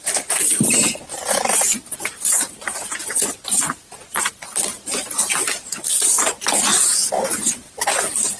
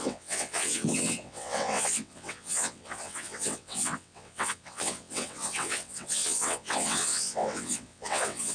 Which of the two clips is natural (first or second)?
first